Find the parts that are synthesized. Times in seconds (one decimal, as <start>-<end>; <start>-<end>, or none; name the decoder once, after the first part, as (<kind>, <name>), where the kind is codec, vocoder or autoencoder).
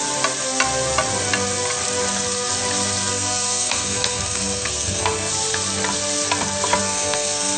3.1-5.3 (codec, SNAC); 6.8-7.6